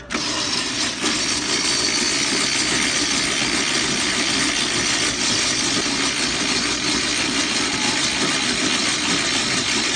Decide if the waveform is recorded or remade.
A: recorded